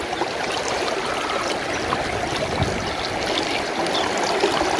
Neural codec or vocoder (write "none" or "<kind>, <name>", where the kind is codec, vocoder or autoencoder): none